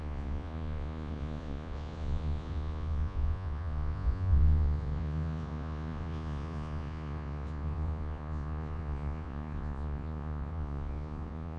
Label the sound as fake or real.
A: fake